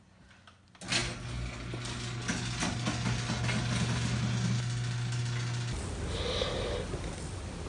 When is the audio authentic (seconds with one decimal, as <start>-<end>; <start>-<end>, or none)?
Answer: 0.0-7.7